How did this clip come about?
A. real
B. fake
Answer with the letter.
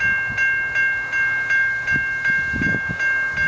A